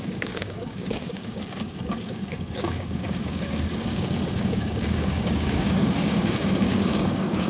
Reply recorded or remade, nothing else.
remade